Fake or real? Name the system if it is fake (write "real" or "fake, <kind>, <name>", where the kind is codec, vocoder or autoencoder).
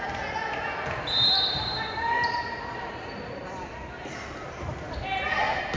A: real